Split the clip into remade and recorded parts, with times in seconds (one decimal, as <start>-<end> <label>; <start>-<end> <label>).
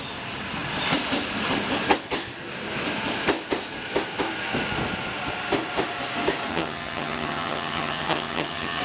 0.0-6.5 recorded; 6.5-8.8 remade